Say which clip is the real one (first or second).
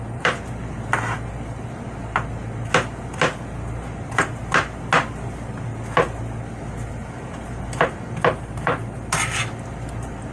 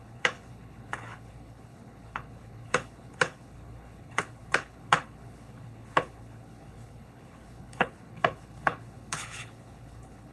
first